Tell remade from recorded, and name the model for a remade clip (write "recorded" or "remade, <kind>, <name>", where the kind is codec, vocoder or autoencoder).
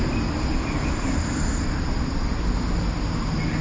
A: recorded